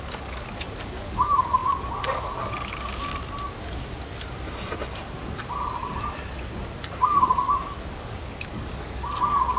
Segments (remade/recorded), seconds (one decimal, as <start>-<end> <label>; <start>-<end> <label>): 0.0-3.1 remade; 3.1-7.0 recorded; 7.0-9.6 remade